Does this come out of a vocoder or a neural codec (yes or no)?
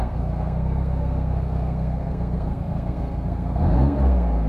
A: yes